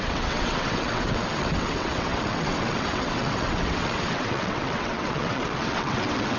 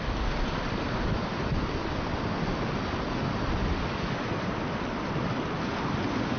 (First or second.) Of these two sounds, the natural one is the second